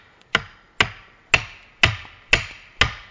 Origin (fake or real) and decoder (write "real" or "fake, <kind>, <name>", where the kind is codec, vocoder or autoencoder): real